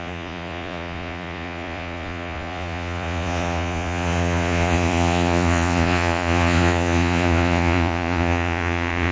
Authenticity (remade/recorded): remade